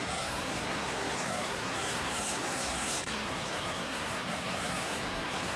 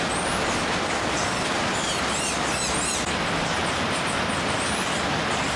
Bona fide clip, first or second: second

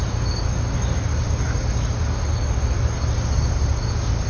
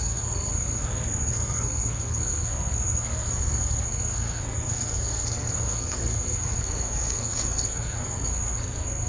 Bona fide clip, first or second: first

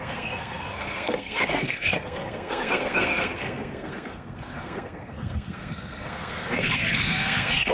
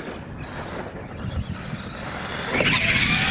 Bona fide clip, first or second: second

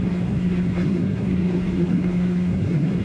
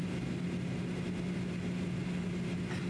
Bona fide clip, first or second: second